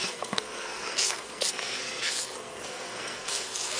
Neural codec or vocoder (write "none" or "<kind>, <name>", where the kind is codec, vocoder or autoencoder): codec, SNAC